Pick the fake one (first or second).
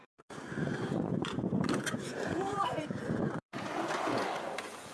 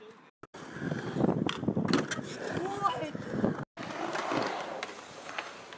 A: first